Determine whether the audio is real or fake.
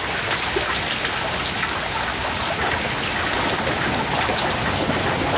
real